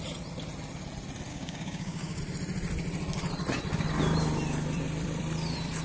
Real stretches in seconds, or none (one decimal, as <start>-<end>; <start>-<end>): 0.0-1.3; 2.2-5.8